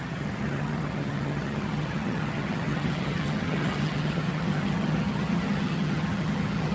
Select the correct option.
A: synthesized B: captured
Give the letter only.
A